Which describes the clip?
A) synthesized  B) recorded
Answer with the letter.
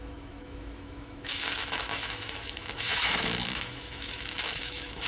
A